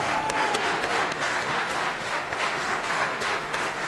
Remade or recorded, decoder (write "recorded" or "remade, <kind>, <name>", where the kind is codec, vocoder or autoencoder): remade, autoencoder, DAC-VAE